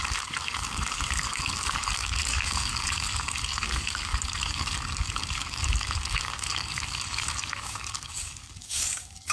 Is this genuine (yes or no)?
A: no